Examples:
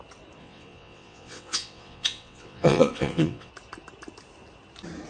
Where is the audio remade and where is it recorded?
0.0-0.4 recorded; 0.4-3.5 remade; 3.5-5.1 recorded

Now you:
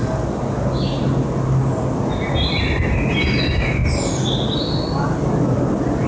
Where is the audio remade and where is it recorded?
0.0-6.1 recorded

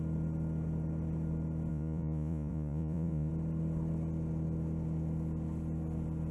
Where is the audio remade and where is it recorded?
0.0-1.7 recorded; 1.7-3.3 remade; 3.3-6.3 recorded

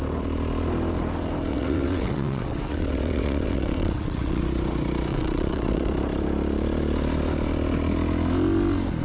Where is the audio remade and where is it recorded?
0.0-1.5 recorded; 1.5-4.4 remade; 4.4-5.1 recorded; 5.1-5.9 remade; 5.9-9.0 recorded

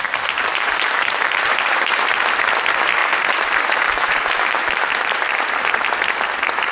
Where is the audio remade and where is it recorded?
0.0-0.5 recorded; 0.5-2.1 remade; 2.1-3.0 recorded; 3.0-5.5 remade; 5.5-6.7 recorded

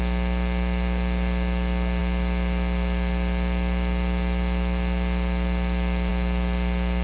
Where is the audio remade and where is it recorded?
0.0-7.0 recorded